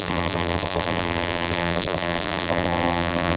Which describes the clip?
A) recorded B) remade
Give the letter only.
B